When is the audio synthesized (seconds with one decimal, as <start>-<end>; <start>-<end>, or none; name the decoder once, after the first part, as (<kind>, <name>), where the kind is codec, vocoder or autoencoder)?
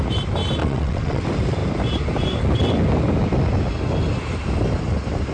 0.6-1.2 (vocoder, WaveNeXt)